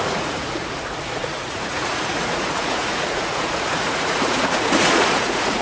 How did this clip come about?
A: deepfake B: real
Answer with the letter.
A